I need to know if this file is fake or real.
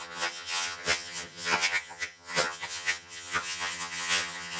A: fake